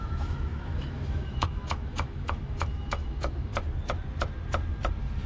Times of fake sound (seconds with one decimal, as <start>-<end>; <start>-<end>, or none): 0.0-3.5